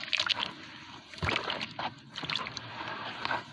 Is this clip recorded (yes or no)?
no